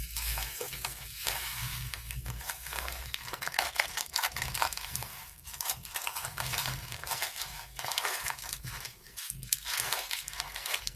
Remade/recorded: remade